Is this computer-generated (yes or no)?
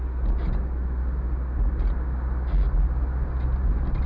no